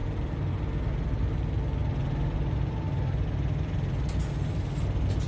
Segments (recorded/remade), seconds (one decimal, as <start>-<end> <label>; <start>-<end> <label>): 0.0-0.5 remade; 0.5-5.3 recorded